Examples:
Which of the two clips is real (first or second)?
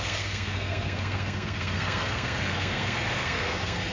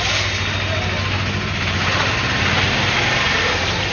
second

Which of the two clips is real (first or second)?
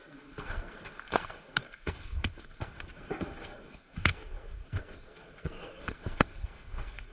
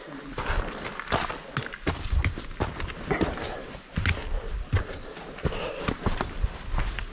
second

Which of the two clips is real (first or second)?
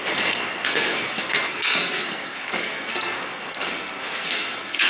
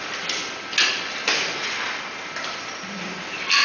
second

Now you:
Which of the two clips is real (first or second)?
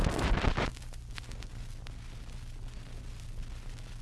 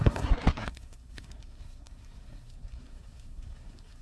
first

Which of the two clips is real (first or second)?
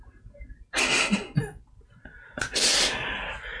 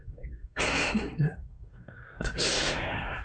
first